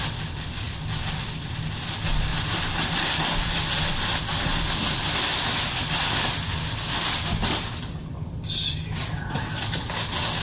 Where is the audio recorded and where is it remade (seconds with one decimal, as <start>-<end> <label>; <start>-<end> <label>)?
0.0-2.3 recorded; 2.3-3.9 remade; 3.9-10.4 recorded